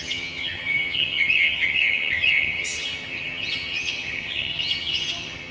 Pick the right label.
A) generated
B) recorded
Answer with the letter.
A